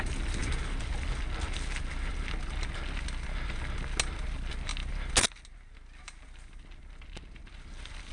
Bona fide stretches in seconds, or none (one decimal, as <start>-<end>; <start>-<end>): 0.0-8.1